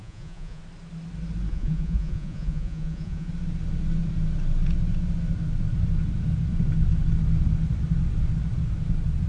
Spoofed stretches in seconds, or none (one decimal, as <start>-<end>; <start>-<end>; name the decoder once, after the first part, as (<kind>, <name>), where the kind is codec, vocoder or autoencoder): 0.0-0.6 (vocoder, Vocos); 1.5-3.3